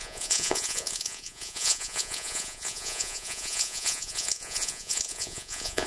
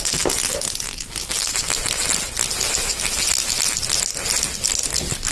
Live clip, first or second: second